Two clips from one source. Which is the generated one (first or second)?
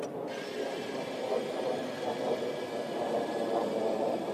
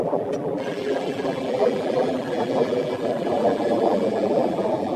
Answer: second